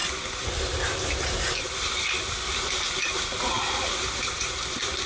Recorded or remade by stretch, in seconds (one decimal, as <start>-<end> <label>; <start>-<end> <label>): 0.0-5.1 recorded